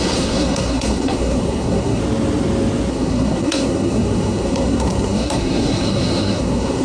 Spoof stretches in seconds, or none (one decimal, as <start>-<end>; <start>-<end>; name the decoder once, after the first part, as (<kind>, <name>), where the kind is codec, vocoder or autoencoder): 0.0-2.0 (codec, SNAC); 2.9-6.8